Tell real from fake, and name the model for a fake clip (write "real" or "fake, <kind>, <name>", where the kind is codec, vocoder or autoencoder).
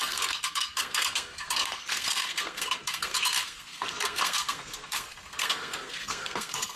fake, codec, SNAC